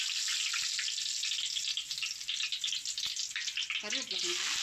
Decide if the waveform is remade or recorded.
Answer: recorded